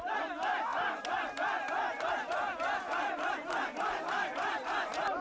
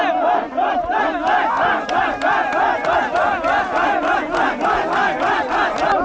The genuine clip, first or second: second